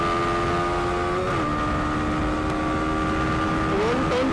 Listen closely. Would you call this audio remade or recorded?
recorded